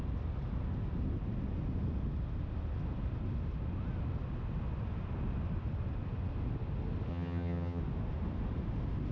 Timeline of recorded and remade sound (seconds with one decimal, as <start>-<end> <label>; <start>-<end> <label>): 0.0-7.1 recorded; 7.1-7.8 remade; 7.8-9.1 recorded